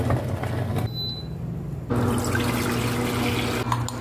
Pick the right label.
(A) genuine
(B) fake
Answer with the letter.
A